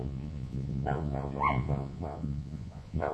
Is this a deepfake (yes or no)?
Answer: yes